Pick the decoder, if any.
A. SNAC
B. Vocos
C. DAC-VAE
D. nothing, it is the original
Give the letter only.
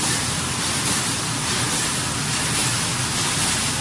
D